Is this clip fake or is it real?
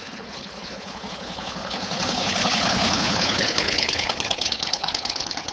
fake